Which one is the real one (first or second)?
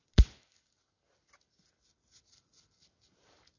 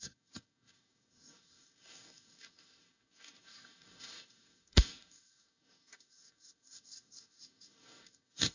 first